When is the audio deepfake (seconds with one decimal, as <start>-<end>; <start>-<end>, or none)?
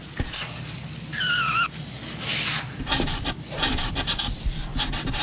none